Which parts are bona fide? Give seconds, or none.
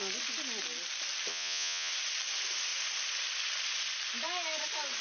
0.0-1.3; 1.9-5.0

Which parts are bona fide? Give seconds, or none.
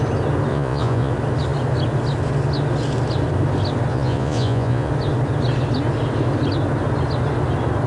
0.0-0.5; 1.1-3.9; 4.9-7.9